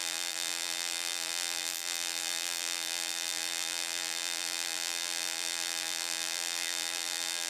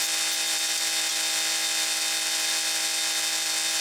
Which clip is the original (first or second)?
second